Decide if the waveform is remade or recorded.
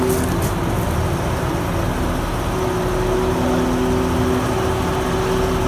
recorded